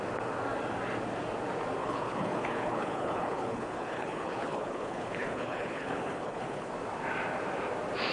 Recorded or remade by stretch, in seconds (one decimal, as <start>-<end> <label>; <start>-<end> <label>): 0.0-1.8 recorded; 1.8-6.7 remade; 6.7-8.1 recorded